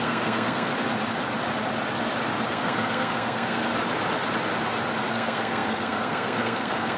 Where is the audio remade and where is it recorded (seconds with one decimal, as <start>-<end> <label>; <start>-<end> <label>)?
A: 0.0-0.7 remade; 0.7-2.5 recorded; 2.5-3.7 remade; 3.7-5.1 recorded; 5.1-7.0 remade